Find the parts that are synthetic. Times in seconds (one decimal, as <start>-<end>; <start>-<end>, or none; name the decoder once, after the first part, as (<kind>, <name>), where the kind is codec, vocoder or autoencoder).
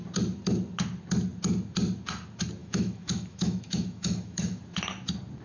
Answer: 2.6-4.6 (autoencoder, DAC-VAE)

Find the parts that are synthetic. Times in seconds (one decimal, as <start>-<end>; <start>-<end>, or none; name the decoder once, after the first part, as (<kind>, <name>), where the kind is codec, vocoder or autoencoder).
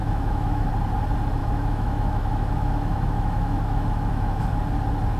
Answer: 0.0-0.7 (autoencoder, DAC-VAE); 1.4-4.5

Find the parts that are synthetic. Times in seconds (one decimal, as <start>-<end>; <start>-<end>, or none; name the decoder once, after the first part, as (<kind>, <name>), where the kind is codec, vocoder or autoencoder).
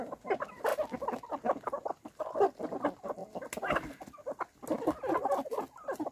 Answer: none